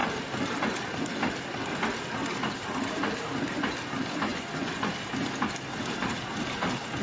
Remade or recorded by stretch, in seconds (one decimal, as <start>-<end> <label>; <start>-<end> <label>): 0.0-4.3 recorded; 4.3-4.9 remade; 4.9-7.0 recorded